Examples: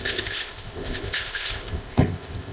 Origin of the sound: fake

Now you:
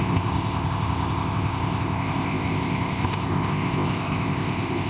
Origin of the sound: fake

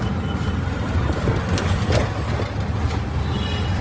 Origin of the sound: real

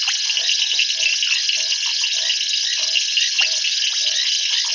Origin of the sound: real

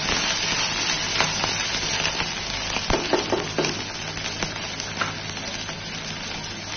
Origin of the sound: real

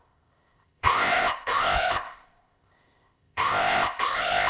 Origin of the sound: fake